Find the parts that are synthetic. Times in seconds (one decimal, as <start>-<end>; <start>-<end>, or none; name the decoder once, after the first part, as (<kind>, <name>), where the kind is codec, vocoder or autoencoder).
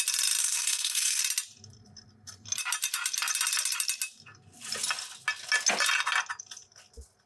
0.4-1.2 (codec, SNAC)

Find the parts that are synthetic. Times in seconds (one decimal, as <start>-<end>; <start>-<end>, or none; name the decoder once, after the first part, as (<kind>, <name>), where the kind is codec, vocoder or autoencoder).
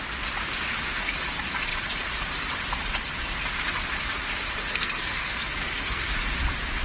4.6-6.1 (codec, SNAC)